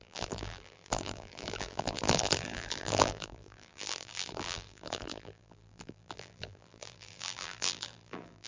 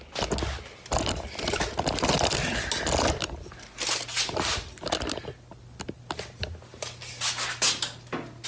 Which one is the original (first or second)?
second